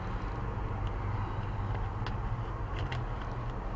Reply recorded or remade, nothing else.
recorded